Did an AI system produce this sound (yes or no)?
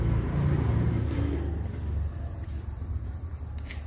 no